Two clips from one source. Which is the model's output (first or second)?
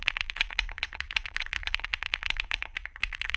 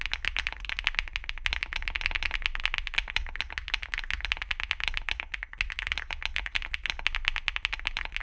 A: first